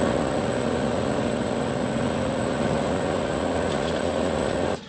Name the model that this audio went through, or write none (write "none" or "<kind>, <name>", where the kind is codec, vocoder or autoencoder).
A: vocoder, Vocos